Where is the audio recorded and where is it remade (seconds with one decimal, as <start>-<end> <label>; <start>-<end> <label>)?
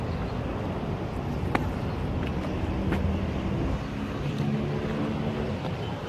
0.0-6.1 recorded